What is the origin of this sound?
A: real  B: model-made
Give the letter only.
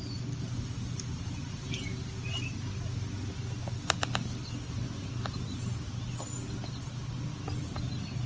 A